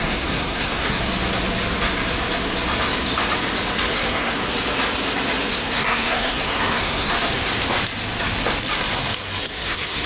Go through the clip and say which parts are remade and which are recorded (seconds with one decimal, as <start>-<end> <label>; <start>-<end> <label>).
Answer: 0.0-1.0 remade; 1.0-3.9 recorded; 3.9-4.4 remade; 4.4-5.5 recorded; 5.5-7.1 remade; 7.1-9.4 recorded; 9.4-10.1 remade